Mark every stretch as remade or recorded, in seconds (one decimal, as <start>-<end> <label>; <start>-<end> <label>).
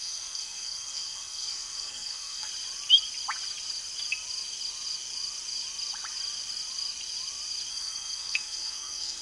0.0-2.5 remade; 2.5-7.7 recorded; 7.7-9.2 remade